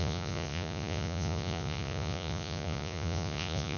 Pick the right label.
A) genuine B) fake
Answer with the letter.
B